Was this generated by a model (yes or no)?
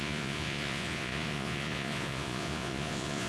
yes